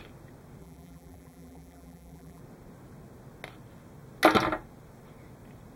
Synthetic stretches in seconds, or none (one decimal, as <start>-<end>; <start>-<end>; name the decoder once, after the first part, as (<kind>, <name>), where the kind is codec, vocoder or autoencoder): 0.6-2.4 (vocoder, BigVGAN v2)